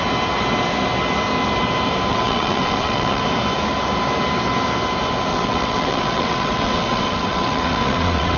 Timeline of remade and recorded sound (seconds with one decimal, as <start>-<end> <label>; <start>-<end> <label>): 0.0-2.1 recorded; 2.1-3.2 remade; 3.2-5.3 recorded; 5.3-8.4 remade